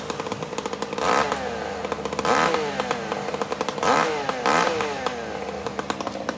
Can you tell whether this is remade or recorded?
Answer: recorded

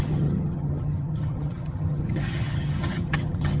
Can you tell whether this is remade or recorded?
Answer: remade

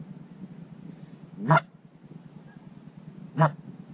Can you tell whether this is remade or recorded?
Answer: recorded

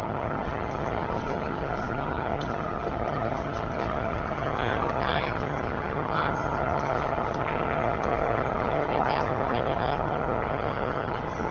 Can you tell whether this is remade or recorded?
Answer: remade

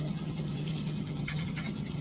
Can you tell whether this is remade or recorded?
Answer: remade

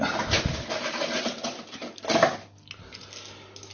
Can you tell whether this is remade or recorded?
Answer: recorded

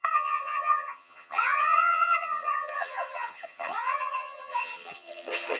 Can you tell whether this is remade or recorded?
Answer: remade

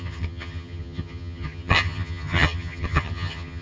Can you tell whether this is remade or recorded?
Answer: remade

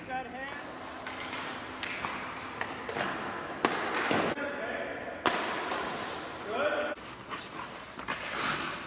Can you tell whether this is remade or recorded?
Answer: recorded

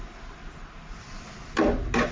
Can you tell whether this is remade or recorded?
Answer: recorded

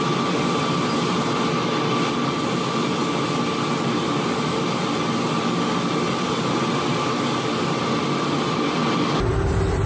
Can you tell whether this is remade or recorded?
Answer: recorded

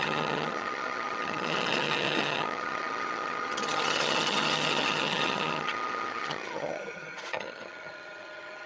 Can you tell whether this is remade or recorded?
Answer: remade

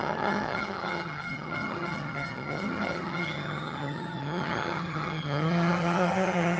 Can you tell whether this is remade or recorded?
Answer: remade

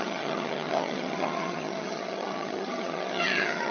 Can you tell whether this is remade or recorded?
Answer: remade